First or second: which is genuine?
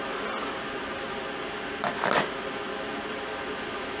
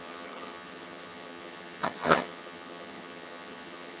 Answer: first